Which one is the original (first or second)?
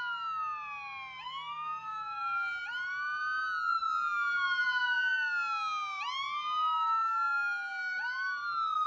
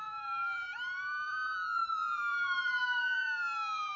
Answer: first